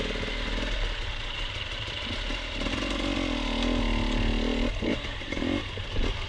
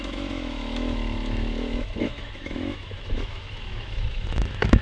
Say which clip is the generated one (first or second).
second